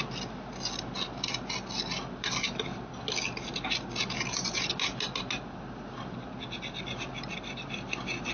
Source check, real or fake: real